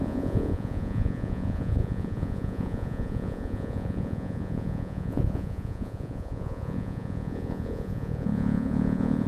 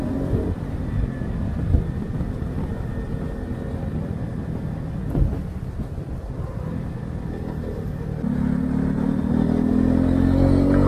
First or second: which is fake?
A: first